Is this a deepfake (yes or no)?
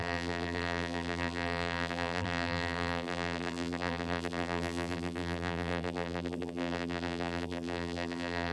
yes